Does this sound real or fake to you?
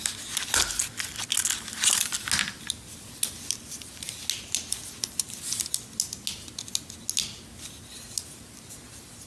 real